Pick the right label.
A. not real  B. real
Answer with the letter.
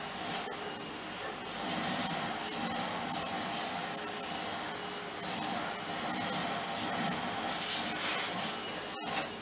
B